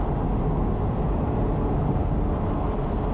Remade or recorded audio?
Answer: recorded